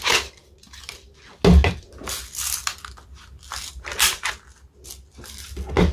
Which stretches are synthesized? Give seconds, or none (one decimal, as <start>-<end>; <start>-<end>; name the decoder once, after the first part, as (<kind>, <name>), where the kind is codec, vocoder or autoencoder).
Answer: none